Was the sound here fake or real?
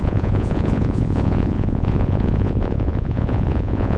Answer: fake